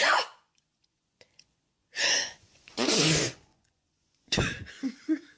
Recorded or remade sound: remade